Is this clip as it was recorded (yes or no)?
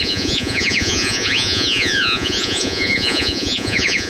no